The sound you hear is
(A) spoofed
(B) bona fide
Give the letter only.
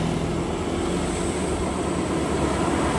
B